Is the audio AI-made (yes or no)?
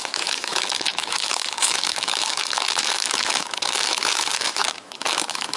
yes